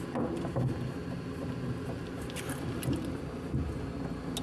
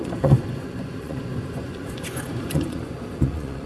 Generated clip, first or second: second